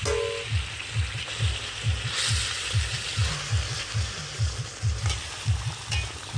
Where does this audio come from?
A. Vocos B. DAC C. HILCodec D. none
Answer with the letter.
D